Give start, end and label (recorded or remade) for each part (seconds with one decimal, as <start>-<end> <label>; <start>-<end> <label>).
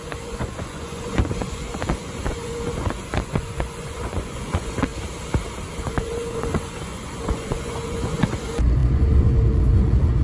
0.0-4.9 remade; 4.9-5.8 recorded; 5.8-10.2 remade